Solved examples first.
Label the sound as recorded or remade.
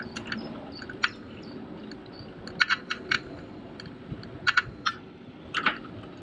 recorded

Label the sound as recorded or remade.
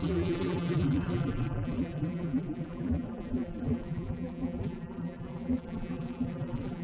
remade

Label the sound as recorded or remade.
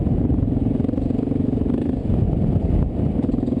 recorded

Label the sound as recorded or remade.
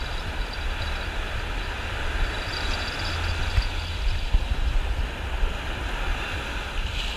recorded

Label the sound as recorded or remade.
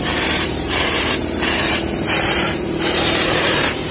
remade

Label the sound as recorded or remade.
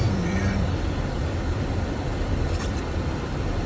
remade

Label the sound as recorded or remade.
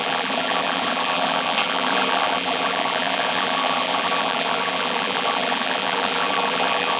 remade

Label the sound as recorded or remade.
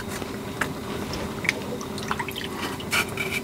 remade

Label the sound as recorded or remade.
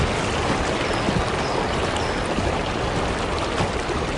recorded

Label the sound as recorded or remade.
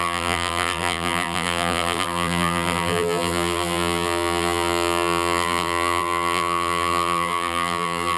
remade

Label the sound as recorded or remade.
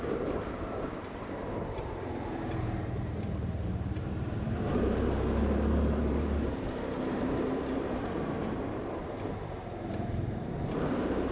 remade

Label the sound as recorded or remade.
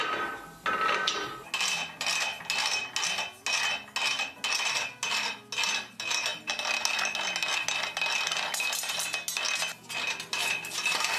recorded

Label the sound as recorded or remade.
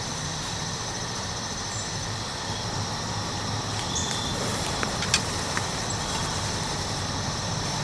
remade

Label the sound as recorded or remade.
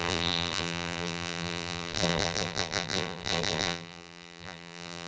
remade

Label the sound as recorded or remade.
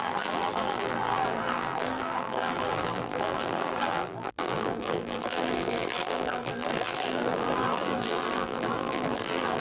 remade